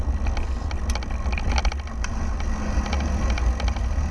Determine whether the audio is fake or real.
real